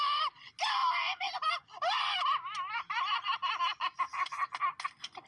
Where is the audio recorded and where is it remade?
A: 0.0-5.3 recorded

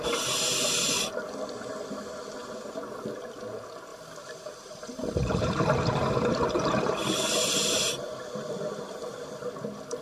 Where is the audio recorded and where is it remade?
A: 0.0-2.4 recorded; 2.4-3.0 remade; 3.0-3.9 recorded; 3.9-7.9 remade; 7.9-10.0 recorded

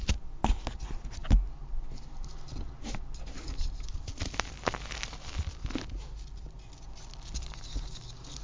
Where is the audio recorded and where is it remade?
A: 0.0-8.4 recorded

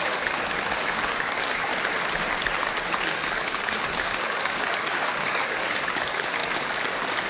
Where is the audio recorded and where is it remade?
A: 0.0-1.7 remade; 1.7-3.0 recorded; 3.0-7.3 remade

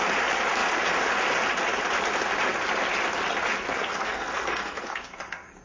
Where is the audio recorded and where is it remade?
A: 0.0-3.7 recorded; 3.7-5.6 remade

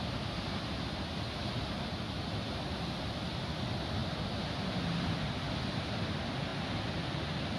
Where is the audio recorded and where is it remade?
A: 0.0-7.6 recorded